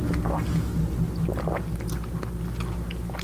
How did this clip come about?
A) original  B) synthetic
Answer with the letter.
A